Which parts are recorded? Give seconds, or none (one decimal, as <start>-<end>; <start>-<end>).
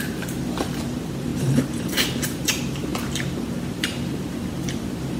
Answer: none